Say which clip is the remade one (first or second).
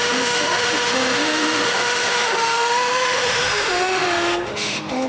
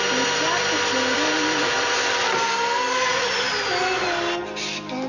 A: first